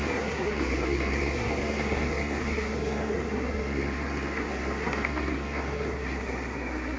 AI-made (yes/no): yes